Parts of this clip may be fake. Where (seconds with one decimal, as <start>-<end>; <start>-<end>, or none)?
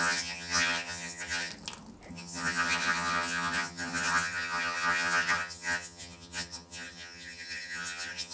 0.0-1.5; 2.1-8.3